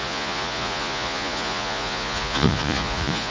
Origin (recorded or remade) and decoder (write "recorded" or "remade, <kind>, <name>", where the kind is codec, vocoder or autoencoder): remade, vocoder, Vocos